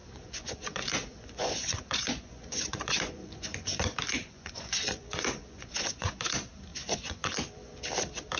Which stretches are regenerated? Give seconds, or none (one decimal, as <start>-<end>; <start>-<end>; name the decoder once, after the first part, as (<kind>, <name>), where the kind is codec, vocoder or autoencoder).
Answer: 0.0-3.8 (vocoder, Vocos); 4.2-6.2; 6.7-7.8